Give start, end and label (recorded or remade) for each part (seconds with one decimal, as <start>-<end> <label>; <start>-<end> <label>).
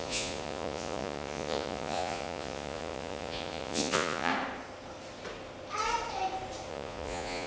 0.0-4.3 remade; 4.3-6.7 recorded; 6.7-7.5 remade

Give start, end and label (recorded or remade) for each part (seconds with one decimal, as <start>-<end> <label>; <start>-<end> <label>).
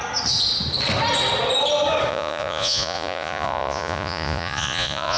0.0-2.1 recorded; 2.1-5.2 remade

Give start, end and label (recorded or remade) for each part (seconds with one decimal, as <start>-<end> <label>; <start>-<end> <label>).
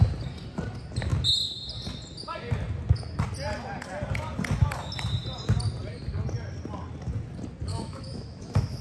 0.0-7.7 recorded; 7.7-8.8 remade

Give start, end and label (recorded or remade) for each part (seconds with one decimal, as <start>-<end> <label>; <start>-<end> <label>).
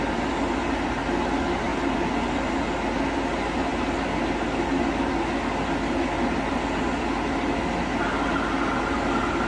0.0-9.5 recorded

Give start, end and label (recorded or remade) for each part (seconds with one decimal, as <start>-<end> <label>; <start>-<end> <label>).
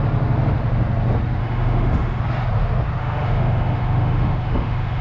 0.0-1.4 recorded; 1.4-2.2 remade; 2.2-3.0 recorded; 3.0-5.0 remade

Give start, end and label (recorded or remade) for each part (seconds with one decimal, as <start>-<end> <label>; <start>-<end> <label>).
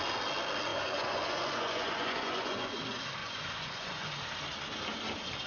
0.0-0.7 recorded; 0.7-2.7 remade; 2.7-3.2 recorded; 3.2-4.1 remade; 4.1-5.5 recorded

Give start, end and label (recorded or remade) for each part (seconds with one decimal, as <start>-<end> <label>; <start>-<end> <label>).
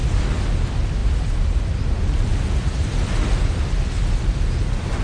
0.0-5.0 recorded